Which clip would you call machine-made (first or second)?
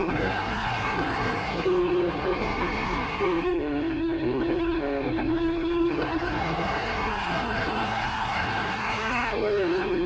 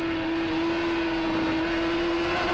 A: first